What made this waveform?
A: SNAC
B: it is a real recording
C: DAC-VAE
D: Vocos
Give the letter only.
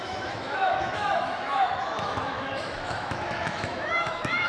C